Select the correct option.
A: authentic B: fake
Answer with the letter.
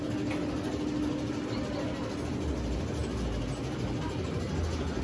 A